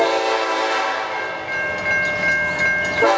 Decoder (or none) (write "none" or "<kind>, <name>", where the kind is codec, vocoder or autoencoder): none